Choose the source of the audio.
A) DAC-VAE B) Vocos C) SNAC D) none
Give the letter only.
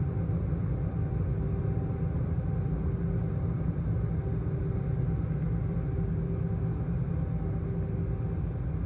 D